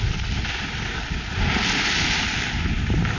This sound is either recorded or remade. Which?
recorded